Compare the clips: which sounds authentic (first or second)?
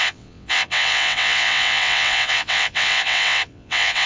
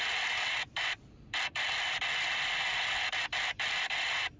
second